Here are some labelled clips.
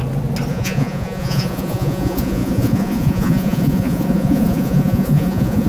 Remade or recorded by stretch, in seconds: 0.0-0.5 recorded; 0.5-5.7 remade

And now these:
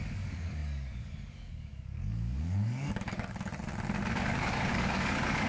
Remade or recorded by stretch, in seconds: 0.0-3.5 remade; 3.5-4.2 recorded; 4.2-5.5 remade